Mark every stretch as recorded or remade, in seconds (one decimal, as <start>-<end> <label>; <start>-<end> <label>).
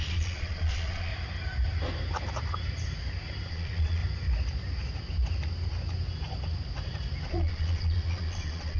0.0-1.1 remade; 1.1-3.5 recorded; 3.5-4.0 remade; 4.0-7.3 recorded; 7.3-8.8 remade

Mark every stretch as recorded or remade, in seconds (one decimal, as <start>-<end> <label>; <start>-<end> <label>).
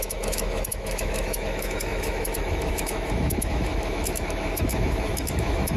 0.0-5.8 remade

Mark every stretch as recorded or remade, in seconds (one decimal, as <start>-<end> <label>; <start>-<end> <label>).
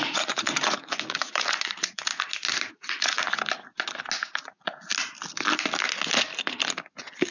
0.0-2.1 remade; 2.1-2.7 recorded; 2.7-3.2 remade; 3.2-4.4 recorded; 4.4-4.9 remade; 4.9-7.3 recorded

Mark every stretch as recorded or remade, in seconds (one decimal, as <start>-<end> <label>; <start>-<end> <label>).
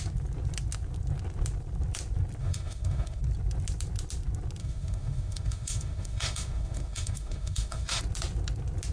0.0-2.4 recorded; 2.4-3.2 remade; 3.2-4.6 recorded; 4.6-8.0 remade; 8.0-8.9 recorded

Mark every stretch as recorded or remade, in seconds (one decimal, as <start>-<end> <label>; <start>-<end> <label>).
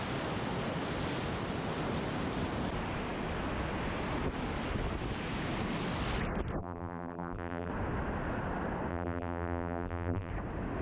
0.0-6.6 recorded; 6.6-7.7 remade; 7.7-8.9 recorded; 8.9-10.3 remade; 10.3-10.8 recorded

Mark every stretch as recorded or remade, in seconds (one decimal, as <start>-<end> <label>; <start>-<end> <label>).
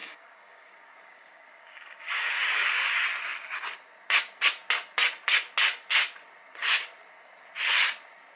0.0-2.9 remade; 2.9-8.4 recorded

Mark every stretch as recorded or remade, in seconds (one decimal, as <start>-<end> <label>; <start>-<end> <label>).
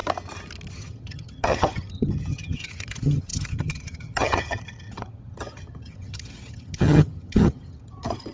0.0-0.7 recorded; 0.7-8.3 remade